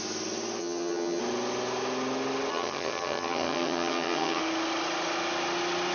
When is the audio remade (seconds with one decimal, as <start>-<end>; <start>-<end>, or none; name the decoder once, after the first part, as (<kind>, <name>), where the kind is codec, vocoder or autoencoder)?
0.6-1.2 (vocoder, HiFi-GAN); 2.5-4.4